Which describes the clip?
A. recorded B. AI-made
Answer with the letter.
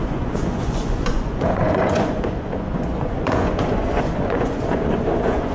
B